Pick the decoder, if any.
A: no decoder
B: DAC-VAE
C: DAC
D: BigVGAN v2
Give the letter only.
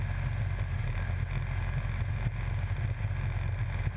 A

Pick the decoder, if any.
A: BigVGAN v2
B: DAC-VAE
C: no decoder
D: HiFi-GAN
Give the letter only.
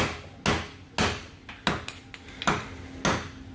C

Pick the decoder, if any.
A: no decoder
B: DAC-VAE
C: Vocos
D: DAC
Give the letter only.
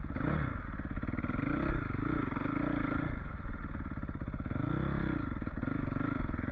A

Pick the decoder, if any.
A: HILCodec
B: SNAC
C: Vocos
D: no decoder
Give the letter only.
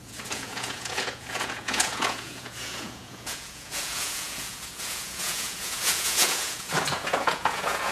C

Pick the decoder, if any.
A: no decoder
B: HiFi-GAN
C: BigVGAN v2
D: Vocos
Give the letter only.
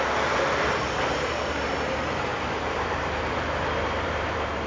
C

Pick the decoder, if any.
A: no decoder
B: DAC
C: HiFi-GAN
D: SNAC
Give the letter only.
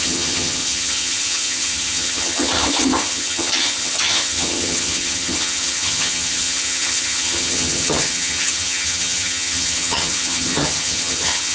C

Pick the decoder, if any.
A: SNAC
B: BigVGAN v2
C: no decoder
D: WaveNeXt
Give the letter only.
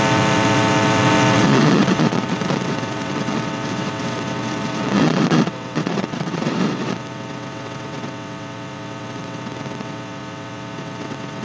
D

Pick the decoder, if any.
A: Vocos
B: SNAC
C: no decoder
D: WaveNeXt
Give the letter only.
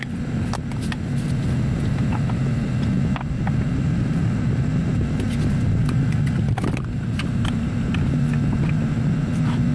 C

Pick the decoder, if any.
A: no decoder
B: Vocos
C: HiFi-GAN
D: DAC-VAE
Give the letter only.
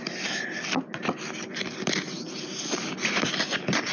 A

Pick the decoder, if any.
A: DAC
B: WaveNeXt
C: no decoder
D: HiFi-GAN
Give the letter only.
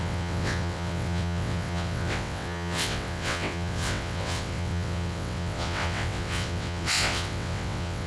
B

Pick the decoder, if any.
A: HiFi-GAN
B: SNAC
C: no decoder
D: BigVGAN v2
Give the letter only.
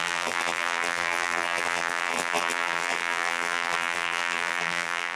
D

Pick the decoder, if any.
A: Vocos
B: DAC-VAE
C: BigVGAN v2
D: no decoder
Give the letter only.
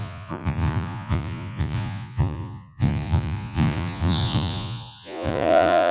A